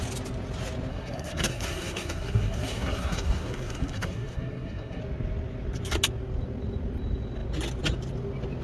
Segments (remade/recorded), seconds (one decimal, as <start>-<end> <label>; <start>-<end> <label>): 0.0-0.9 recorded; 0.9-5.0 remade; 5.0-8.6 recorded